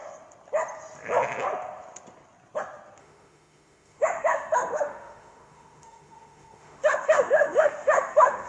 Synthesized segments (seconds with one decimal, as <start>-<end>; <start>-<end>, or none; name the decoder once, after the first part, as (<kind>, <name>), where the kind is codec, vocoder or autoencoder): 3.0-8.5 (autoencoder, DAC-VAE)